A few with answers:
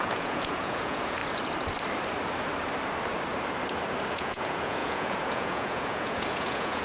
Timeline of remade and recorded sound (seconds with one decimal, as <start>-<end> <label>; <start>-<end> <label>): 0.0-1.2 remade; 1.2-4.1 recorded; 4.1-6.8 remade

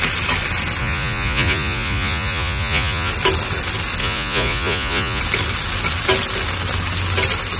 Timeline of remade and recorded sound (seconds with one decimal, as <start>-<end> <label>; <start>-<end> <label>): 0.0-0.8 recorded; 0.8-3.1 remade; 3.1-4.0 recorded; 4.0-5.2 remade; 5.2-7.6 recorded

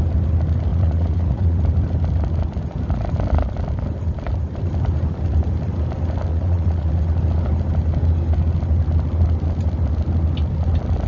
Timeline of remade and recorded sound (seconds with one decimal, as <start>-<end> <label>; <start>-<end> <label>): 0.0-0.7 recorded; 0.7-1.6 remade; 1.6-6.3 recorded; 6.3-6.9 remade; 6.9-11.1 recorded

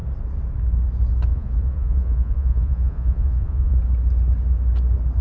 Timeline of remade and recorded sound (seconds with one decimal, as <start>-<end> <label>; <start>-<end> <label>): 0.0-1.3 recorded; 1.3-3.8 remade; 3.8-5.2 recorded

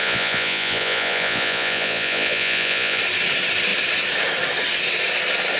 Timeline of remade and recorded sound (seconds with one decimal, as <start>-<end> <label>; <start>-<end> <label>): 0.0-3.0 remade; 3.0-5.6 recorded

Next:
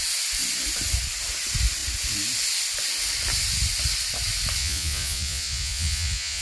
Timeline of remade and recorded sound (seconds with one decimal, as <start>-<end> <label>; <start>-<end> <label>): 0.0-4.6 recorded; 4.6-6.4 remade

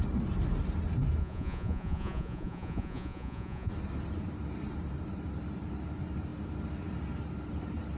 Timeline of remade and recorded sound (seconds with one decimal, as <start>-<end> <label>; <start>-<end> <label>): 0.0-1.2 recorded; 1.2-3.7 remade; 3.7-8.0 recorded

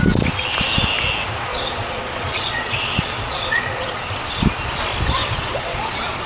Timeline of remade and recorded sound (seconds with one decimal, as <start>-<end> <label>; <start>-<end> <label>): 0.0-1.5 recorded; 1.5-4.0 remade; 4.0-5.2 recorded; 5.2-6.3 remade